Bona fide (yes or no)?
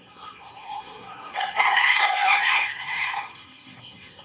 no